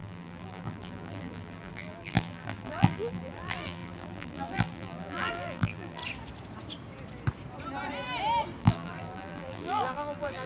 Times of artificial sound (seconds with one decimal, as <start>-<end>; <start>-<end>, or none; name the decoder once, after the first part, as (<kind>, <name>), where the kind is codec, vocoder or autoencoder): 0.0-6.0 (vocoder, BigVGAN v2); 8.6-10.5